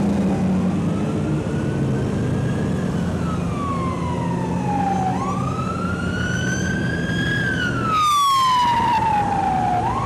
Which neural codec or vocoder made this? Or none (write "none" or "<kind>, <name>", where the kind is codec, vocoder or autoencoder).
none